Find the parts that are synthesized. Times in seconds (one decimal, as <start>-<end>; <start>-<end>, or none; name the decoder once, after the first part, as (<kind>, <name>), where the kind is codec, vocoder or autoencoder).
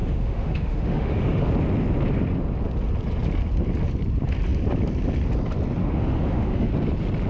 0.0-1.5 (autoencoder, DAC-VAE); 5.8-6.7